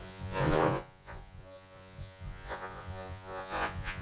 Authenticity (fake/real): fake